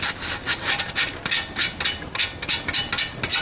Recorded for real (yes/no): yes